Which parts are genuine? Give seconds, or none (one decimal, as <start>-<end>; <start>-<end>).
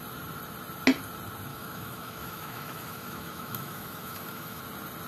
0.0-1.5; 4.6-5.1